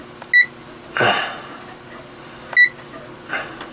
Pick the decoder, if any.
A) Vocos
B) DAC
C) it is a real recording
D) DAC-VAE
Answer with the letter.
C